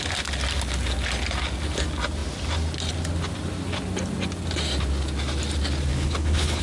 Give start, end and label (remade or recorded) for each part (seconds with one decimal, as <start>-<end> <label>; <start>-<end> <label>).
0.0-5.9 recorded; 5.9-6.6 remade